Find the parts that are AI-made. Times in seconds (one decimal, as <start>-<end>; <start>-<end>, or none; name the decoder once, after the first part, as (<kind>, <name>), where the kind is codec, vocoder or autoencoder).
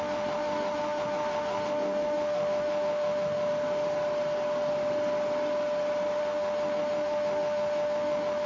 0.0-3.5 (autoencoder, DAC-VAE); 6.2-8.5